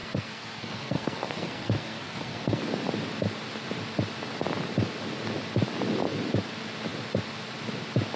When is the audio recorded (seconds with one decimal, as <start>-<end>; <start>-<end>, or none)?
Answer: 2.6-8.2